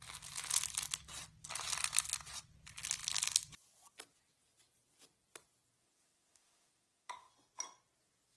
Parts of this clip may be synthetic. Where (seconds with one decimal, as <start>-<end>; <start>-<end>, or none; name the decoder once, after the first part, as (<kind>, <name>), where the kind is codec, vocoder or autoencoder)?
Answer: 5.8-7.3 (autoencoder, DAC-VAE)

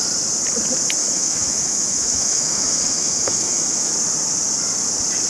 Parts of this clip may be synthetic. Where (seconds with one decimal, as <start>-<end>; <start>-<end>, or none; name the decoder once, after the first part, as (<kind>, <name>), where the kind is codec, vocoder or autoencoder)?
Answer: 1.0-3.9 (autoencoder, DAC-VAE)

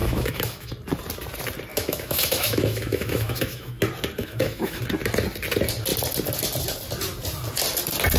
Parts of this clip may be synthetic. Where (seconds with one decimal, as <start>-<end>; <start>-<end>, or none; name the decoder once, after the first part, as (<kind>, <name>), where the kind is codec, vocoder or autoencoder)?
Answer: 0.0-0.7 (autoencoder, DAC-VAE); 1.7-3.8; 4.2-4.8